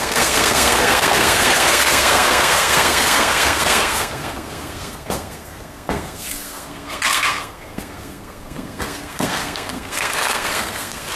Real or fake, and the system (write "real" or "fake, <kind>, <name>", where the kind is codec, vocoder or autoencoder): fake, codec, SNAC